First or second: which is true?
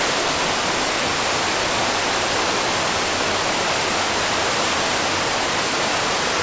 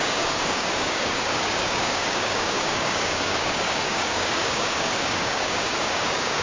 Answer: first